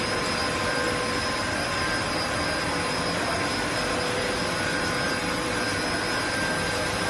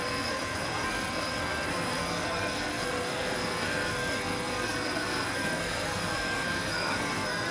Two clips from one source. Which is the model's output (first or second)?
second